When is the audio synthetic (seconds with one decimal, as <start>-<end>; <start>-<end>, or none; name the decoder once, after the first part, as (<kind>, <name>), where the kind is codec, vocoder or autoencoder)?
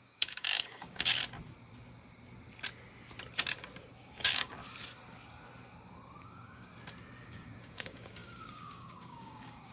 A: 0.0-1.2 (codec, DAC); 4.0-4.6; 6.2-6.7; 7.2-9.7